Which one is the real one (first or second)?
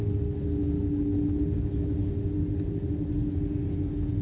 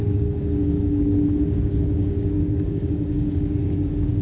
first